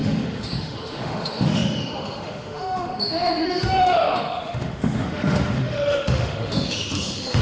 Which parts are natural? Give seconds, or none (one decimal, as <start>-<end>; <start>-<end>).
none